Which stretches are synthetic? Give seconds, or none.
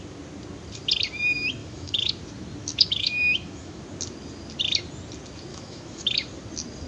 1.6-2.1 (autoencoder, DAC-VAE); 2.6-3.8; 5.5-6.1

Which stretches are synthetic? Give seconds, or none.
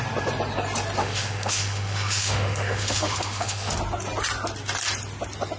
1.0-3.7 (autoencoder, DAC-VAE)